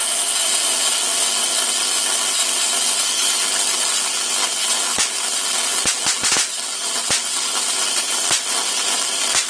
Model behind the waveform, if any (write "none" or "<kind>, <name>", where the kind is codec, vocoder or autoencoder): none